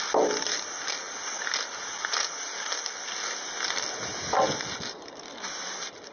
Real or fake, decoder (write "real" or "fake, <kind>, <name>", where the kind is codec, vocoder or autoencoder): real